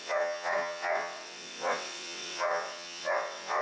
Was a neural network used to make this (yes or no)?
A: yes